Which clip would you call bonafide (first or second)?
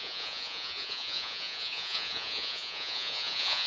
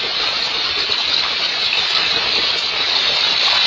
second